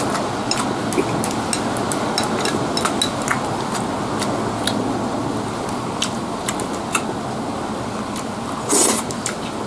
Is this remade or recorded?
recorded